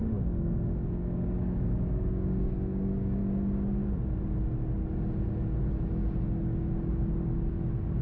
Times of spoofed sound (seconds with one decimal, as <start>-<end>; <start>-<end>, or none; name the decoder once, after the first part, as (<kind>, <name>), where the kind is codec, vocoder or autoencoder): 0.0-3.2 (codec, DAC)

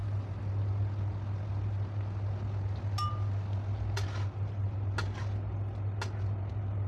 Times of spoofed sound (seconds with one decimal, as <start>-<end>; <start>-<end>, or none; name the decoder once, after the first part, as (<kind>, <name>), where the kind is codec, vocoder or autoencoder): none

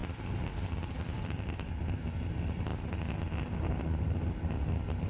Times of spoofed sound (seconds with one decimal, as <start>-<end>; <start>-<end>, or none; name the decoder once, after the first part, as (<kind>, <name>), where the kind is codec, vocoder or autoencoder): 0.0-1.7 (vocoder, BigVGAN v2)

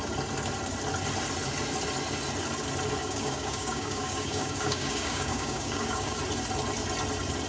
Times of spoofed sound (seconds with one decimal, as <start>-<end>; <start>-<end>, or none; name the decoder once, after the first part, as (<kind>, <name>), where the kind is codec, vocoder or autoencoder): 3.0-6.2 (codec, DAC)

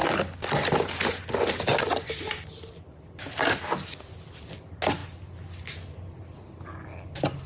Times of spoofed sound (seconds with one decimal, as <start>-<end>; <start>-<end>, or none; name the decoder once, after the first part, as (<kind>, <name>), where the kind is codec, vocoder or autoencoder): none

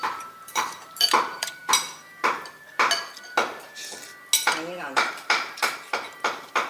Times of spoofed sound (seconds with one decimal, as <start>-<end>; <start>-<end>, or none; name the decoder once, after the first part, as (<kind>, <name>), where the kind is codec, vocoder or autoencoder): 0.0-1.6 (vocoder, BigVGAN v2); 4.8-6.7

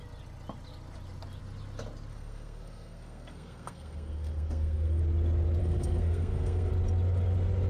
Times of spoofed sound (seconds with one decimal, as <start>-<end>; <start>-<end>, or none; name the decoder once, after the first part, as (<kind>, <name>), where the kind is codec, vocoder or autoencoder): 2.1-5.0 (codec, SNAC); 5.6-6.7